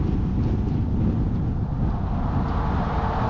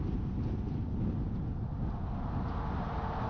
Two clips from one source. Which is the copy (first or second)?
first